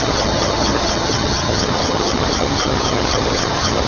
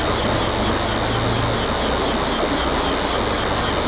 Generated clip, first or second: first